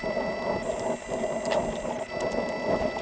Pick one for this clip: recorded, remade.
recorded